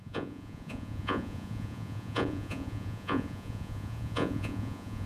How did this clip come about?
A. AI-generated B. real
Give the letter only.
A